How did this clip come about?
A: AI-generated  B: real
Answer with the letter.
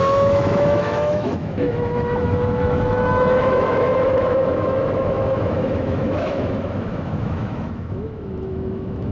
A